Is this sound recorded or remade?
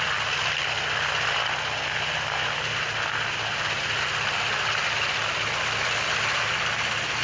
recorded